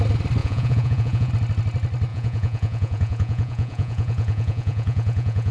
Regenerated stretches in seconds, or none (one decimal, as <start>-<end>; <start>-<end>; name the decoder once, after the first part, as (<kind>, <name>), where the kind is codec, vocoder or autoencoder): 0.4-1.3 (vocoder, Vocos); 2.1-5.5